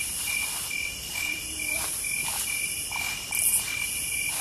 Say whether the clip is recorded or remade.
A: recorded